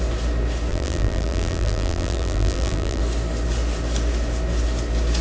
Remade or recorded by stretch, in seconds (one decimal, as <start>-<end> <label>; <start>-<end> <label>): 0.0-0.7 recorded; 0.7-3.0 remade; 3.0-5.2 recorded